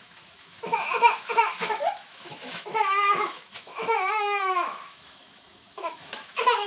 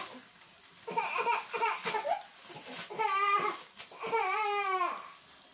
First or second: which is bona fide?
second